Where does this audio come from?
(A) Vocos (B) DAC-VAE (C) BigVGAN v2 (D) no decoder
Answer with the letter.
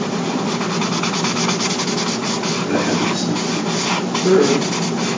D